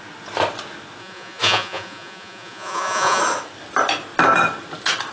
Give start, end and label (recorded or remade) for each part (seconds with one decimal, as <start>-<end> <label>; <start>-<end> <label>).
0.0-1.0 recorded; 1.0-3.2 remade; 3.2-5.1 recorded